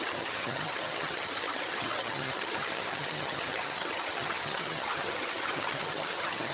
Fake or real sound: fake